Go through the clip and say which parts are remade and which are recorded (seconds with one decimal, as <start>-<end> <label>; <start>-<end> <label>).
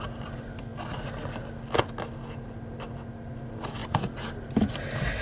0.0-5.2 recorded